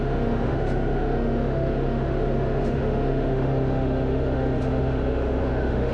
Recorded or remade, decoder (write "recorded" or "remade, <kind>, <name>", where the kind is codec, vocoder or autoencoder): remade, autoencoder, DAC-VAE